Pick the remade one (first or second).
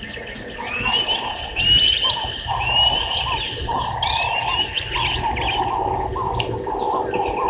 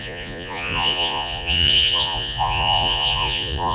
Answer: second